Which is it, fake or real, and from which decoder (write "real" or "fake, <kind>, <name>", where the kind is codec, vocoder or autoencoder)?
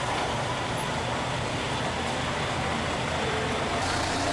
real